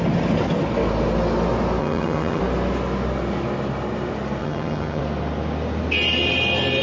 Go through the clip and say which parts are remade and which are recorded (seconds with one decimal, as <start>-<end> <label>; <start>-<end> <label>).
0.0-1.8 recorded; 1.8-2.4 remade; 2.4-4.4 recorded; 4.4-5.0 remade; 5.0-6.8 recorded